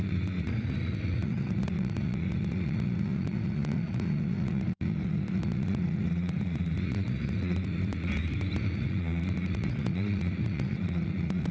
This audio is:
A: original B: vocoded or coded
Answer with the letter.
B